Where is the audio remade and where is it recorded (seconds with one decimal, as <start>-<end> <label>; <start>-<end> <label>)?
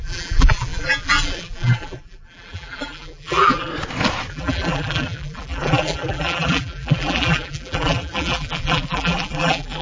0.0-3.7 remade; 3.7-4.3 recorded; 4.3-9.8 remade